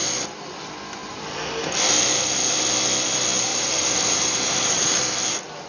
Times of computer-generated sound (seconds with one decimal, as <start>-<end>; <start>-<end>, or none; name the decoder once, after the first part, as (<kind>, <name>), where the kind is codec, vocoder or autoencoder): 3.5-5.0 (vocoder, BigVGAN v2)